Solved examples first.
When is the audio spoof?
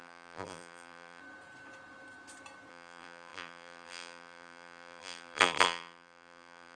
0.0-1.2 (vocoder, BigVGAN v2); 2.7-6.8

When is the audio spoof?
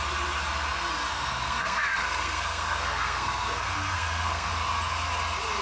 1.1-4.5 (codec, SNAC)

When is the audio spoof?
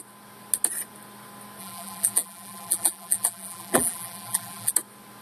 1.6-4.7 (vocoder, BigVGAN v2)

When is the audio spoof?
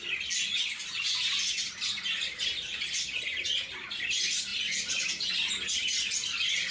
none